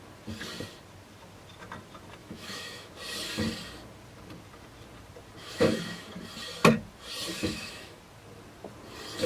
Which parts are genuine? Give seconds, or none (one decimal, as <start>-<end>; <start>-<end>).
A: 0.0-2.2; 2.9-5.4; 6.1-7.4; 8.0-9.3